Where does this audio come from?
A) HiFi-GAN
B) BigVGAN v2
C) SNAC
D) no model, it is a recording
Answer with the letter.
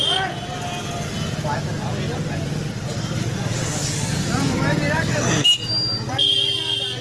D